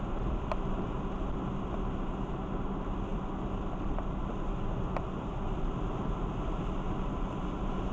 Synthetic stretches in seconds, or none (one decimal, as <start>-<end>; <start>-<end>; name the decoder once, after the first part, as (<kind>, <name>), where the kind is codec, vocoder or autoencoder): none